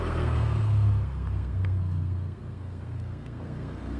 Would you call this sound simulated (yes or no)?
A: yes